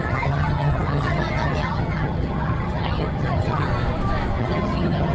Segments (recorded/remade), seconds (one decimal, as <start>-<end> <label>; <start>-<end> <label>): 0.0-3.7 remade; 3.7-4.4 recorded; 4.4-5.1 remade